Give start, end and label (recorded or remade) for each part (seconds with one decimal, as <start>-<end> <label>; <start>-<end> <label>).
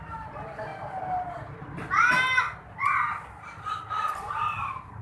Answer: 0.0-5.0 recorded